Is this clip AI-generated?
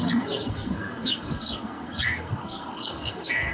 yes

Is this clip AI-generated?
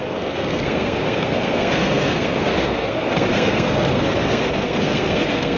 yes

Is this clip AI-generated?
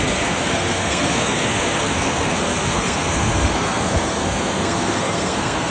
yes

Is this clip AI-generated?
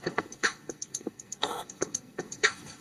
yes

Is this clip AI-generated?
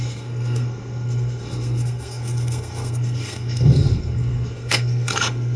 yes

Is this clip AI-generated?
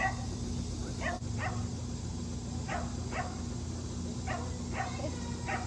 no